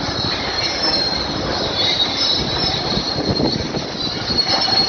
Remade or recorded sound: recorded